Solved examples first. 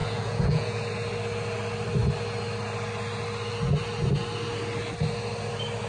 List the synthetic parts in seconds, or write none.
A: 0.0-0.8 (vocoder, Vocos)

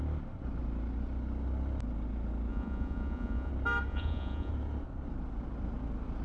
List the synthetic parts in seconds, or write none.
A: 2.5-3.5 (vocoder, Vocos); 3.9-4.5

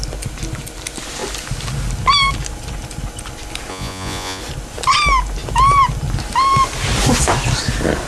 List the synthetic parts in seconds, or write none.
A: 3.7-4.4 (vocoder, Vocos)

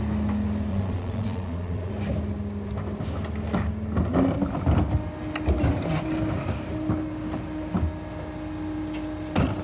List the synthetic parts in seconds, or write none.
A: 0.7-1.9 (vocoder, Vocos)

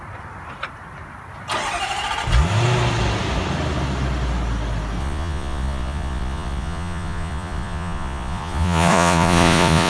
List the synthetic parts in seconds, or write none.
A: 5.0-9.9 (vocoder, Vocos)

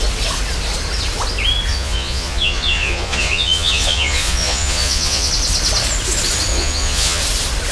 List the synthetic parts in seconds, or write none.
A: 1.7-5.3 (vocoder, Vocos); 6.5-7.2

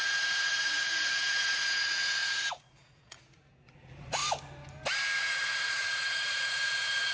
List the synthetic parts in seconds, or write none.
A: 0.0-4.2 (vocoder, Vocos); 5.2-7.1